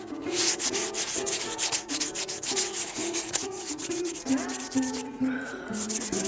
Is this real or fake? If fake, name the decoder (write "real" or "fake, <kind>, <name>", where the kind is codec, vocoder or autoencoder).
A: fake, vocoder, Vocos